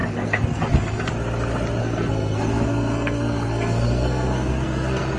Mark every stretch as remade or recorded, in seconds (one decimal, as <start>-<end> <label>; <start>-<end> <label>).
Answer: 0.0-1.1 remade; 1.1-1.8 recorded; 1.8-5.2 remade